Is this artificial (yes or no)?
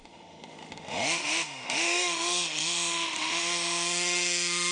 yes